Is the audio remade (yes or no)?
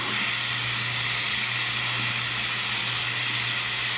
no